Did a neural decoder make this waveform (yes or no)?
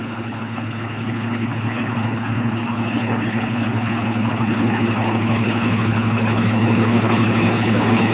yes